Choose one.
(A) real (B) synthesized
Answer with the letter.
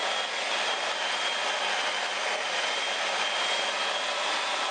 B